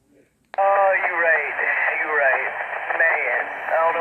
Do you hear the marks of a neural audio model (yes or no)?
no